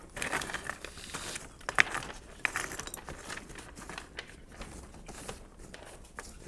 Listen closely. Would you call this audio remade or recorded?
recorded